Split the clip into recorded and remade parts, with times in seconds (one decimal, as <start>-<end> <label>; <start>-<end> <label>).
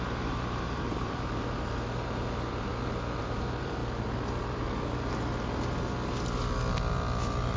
0.0-2.7 remade; 2.7-3.2 recorded; 3.2-3.8 remade; 3.8-7.6 recorded